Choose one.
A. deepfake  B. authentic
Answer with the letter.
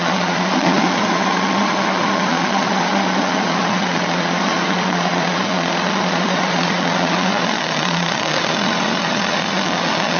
A